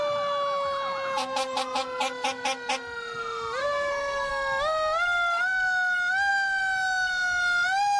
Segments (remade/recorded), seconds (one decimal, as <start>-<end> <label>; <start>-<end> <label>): 0.0-3.6 recorded; 3.6-4.3 remade; 4.3-8.0 recorded